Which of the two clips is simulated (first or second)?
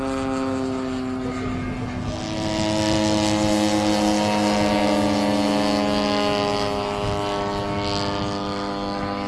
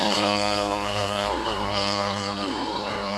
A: second